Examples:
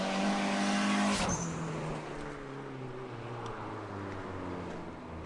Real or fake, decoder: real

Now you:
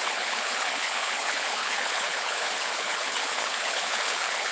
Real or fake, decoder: fake, codec, HILCodec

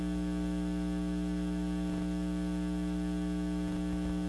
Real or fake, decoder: real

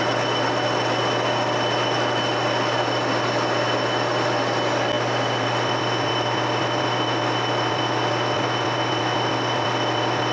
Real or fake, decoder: real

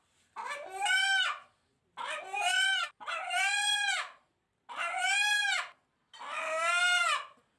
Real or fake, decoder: real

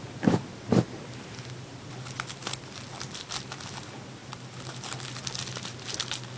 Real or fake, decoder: real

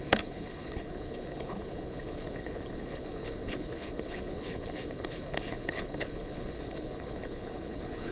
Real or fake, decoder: fake, codec, HILCodec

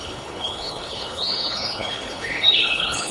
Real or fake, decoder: fake, codec, HILCodec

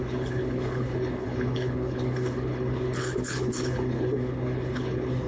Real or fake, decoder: fake, codec, HILCodec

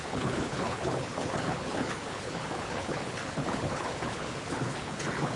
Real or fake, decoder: fake, codec, HILCodec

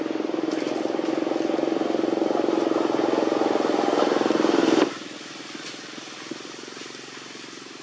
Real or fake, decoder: real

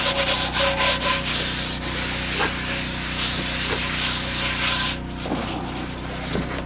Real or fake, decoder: real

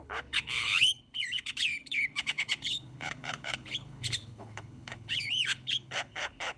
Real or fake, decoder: fake, codec, HILCodec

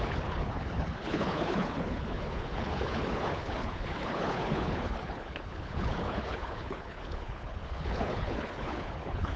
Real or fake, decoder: fake, codec, HILCodec